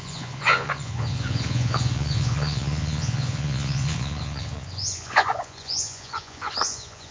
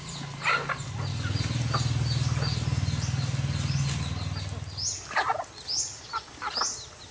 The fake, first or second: first